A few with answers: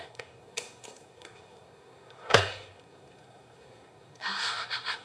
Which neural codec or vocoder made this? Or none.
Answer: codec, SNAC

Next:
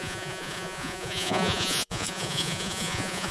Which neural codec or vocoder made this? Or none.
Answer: vocoder, Vocos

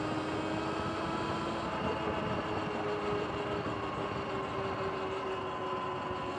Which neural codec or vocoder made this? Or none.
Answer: none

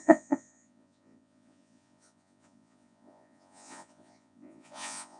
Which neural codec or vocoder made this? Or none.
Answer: vocoder, Vocos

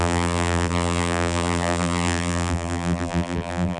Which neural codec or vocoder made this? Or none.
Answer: vocoder, BigVGAN v2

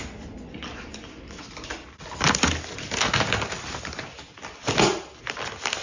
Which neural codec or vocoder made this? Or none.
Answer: none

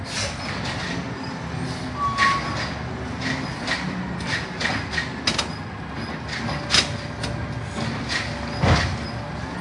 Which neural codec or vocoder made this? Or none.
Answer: none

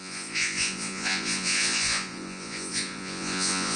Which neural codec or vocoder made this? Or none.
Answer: vocoder, Vocos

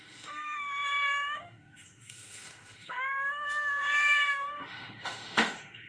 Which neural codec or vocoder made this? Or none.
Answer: autoencoder, DAC-VAE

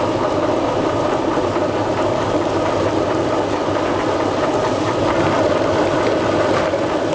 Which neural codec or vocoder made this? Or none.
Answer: none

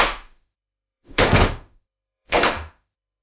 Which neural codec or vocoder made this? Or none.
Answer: autoencoder, DAC-VAE